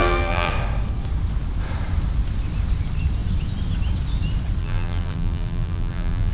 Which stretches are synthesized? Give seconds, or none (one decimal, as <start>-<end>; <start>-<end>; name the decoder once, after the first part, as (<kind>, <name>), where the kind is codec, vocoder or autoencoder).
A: 0.0-0.5 (vocoder, BigVGAN v2); 4.6-6.3